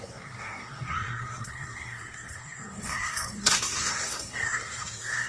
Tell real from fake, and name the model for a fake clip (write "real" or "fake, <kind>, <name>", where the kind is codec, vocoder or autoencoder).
fake, codec, SNAC